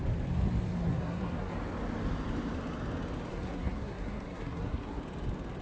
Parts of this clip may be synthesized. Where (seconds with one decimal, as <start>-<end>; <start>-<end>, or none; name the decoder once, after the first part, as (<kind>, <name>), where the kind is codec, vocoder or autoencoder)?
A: 0.9-1.5 (codec, SNAC); 3.3-5.0